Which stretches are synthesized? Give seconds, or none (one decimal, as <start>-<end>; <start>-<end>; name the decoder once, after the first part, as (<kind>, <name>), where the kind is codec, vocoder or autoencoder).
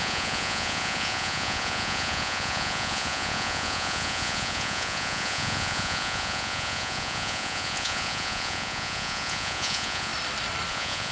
0.0-10.1 (vocoder, Vocos); 10.7-11.1